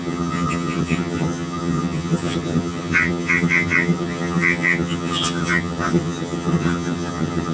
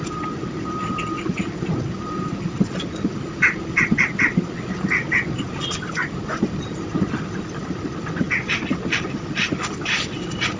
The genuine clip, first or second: second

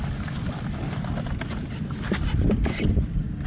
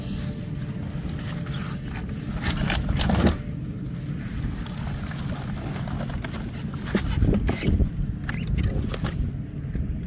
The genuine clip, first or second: second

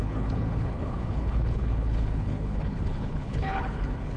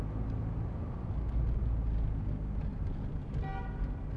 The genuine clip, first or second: second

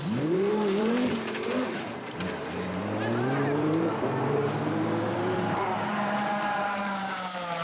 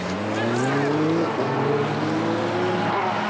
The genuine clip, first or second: second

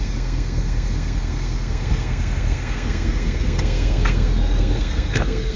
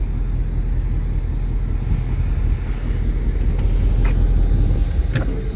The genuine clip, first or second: second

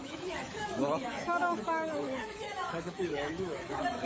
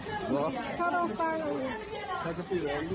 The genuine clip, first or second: second